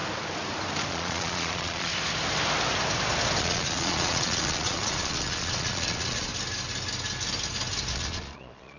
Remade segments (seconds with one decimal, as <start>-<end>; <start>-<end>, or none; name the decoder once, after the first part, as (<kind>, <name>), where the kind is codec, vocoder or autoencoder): 0.9-1.9 (vocoder, Vocos); 3.4-6.3; 7.9-8.8